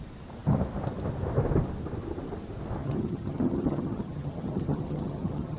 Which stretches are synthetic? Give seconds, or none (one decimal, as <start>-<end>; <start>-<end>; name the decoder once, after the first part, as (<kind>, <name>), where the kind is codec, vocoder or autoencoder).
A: 2.8-5.6 (vocoder, HiFi-GAN)